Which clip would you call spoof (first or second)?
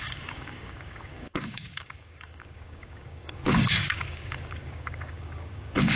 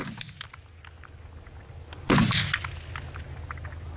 first